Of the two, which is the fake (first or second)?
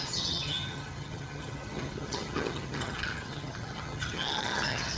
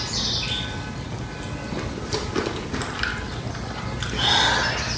first